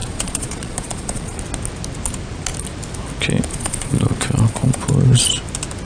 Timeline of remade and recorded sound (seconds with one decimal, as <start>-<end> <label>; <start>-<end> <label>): 0.0-1.4 remade; 1.4-3.5 recorded; 3.5-4.9 remade; 4.9-5.8 recorded